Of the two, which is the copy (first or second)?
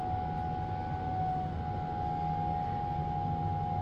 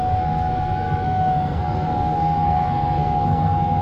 second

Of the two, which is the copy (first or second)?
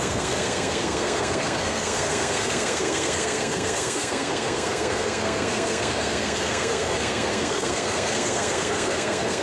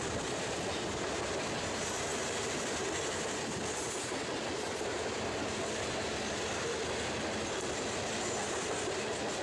first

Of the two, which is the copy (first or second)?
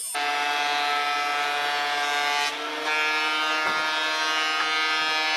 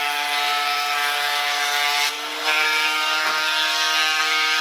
second